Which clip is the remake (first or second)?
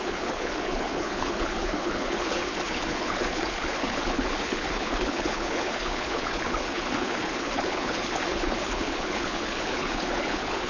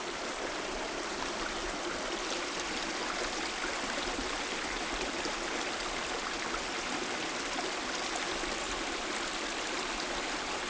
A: first